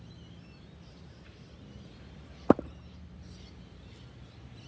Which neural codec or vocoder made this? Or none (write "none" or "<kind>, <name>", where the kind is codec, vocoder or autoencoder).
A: none